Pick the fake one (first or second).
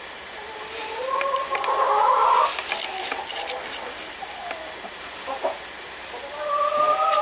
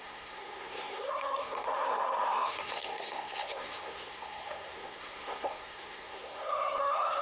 second